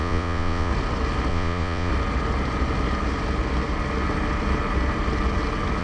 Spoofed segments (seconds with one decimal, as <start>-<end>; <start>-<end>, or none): 0.0-0.7; 1.3-1.9

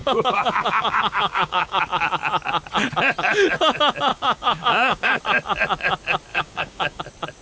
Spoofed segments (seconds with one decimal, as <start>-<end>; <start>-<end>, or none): 0.0-1.8; 4.1-5.2; 6.3-7.0

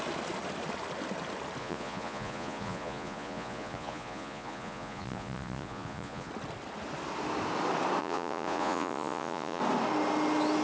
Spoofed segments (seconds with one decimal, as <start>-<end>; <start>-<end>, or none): 1.6-6.3; 8.0-9.6